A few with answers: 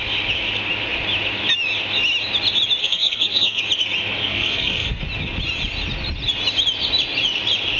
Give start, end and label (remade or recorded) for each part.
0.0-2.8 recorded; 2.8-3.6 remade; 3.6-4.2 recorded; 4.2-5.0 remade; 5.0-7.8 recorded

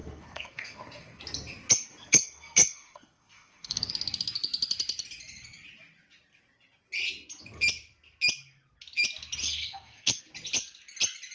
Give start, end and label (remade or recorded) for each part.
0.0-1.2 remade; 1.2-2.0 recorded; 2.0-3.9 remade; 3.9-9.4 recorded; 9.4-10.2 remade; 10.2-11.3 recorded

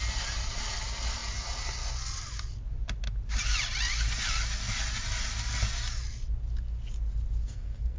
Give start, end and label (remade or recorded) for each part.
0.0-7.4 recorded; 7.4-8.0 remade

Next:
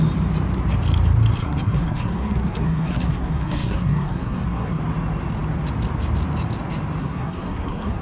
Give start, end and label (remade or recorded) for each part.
0.0-1.4 recorded; 1.4-4.8 remade; 4.8-7.0 recorded; 7.0-8.0 remade